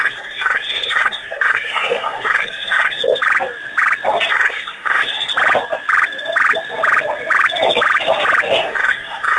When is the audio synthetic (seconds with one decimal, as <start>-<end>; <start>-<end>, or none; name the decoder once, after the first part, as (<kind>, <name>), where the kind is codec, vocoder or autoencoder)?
0.0-3.0 (codec, SNAC); 4.3-5.3; 8.6-9.4